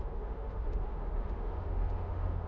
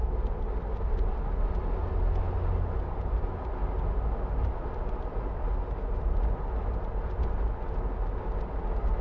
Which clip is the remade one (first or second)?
first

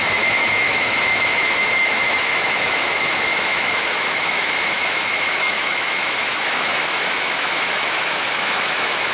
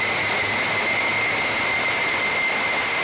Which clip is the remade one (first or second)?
first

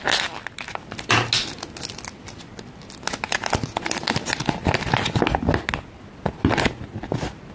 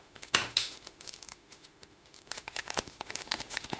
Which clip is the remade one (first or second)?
second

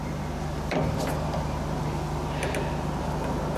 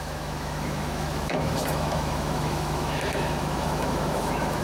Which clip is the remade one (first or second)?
second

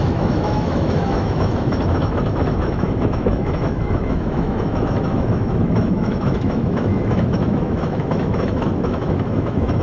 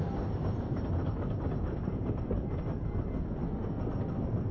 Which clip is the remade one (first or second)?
first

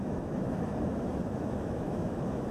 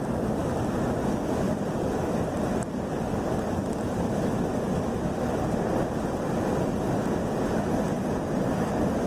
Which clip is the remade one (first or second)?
first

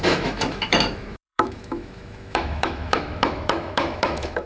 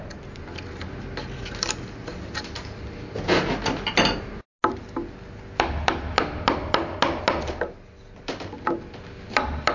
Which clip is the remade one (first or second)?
first